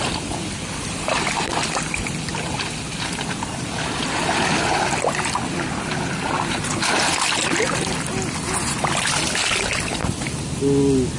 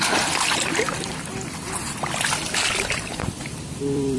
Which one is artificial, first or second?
second